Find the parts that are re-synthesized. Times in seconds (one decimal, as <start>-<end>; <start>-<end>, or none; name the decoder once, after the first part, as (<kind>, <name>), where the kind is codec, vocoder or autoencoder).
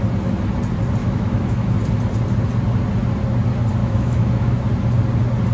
1.0-1.7 (autoencoder, DAC-VAE); 3.8-4.6